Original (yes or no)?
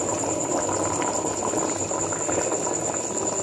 yes